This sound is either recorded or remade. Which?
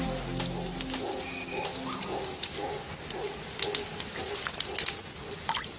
recorded